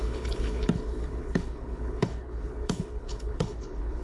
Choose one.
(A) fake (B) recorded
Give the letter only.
A